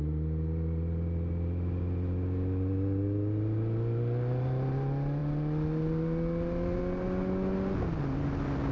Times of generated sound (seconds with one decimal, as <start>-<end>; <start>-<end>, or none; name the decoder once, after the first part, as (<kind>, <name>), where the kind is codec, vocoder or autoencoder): none